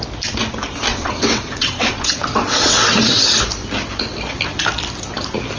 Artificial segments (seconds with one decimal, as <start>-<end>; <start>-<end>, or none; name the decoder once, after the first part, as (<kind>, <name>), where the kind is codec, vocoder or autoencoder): 0.9-3.2 (vocoder, WaveNeXt)